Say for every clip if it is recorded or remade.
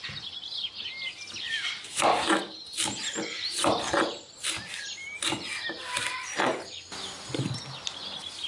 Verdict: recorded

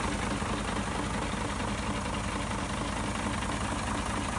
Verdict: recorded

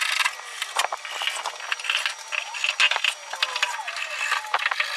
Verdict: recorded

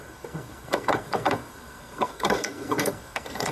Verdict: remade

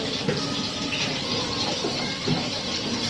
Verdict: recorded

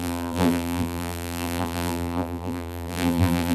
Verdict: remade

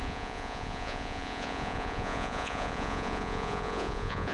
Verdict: remade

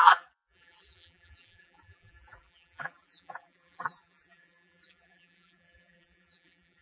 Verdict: remade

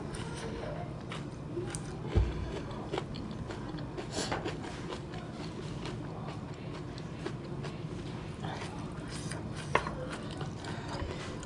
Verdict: recorded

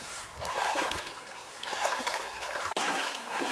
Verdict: remade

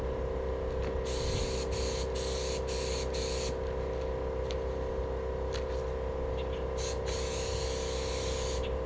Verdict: recorded